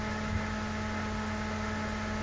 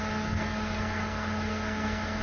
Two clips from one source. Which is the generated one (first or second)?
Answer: second